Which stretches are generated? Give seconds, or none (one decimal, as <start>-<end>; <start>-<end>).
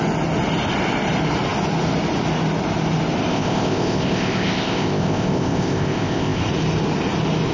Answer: 3.3-6.4